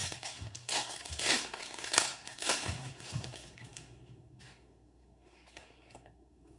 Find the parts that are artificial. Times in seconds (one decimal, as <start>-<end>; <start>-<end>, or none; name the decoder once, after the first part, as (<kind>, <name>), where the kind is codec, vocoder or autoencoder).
0.0-6.6 (codec, SNAC)